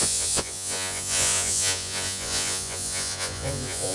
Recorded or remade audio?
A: remade